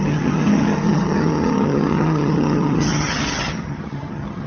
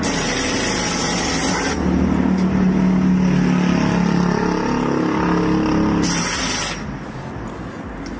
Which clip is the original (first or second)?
second